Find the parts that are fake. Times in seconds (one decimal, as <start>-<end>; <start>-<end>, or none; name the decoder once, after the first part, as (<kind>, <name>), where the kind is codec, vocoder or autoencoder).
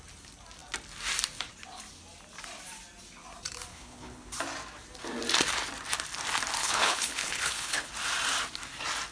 3.7-4.3 (codec, HILCodec); 6.6-7.9